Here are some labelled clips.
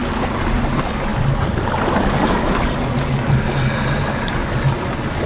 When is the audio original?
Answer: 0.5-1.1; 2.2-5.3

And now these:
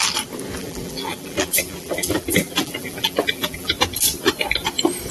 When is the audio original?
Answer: 0.0-0.6; 3.7-5.1

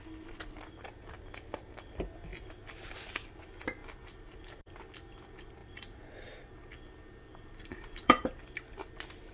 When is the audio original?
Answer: 0.0-5.6; 6.7-7.3; 8.4-9.3

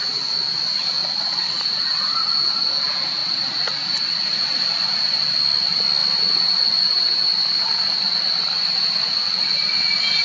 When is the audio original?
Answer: 0.0-1.0; 2.3-10.2

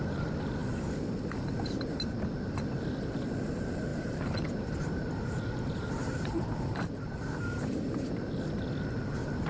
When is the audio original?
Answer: 0.0-3.9; 8.3-9.5